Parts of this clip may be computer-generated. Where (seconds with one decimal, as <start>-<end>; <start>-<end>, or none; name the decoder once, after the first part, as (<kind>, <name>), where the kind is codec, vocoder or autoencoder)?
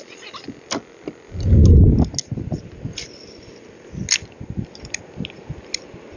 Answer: none